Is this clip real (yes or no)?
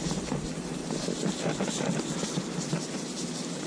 yes